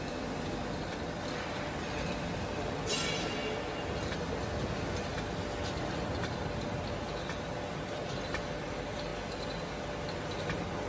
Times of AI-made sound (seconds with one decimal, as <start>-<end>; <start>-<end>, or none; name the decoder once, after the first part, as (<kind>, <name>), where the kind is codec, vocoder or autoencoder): 0.0-3.4 (vocoder, BigVGAN v2); 7.7-9.1